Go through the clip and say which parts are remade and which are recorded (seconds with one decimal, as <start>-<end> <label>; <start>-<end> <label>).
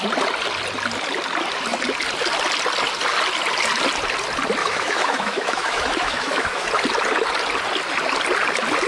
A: 0.0-4.6 recorded; 4.6-6.7 remade; 6.7-8.9 recorded